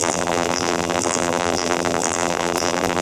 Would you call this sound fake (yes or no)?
yes